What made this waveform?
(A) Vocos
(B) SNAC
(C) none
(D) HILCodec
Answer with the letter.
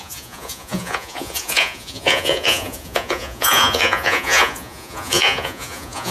A